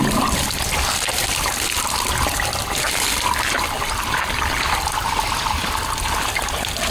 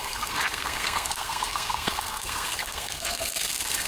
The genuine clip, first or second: first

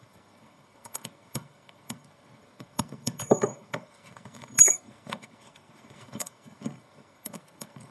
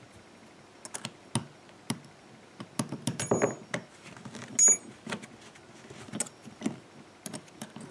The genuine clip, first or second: second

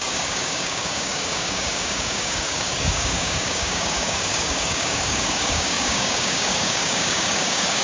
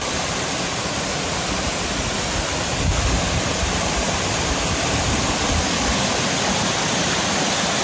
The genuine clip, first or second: second